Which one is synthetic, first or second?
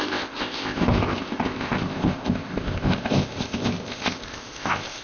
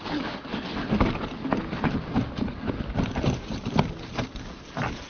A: first